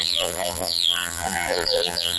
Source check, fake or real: fake